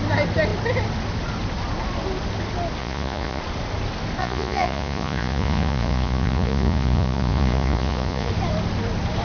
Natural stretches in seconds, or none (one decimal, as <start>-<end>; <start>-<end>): 0.0-2.8; 3.4-4.2; 8.3-9.2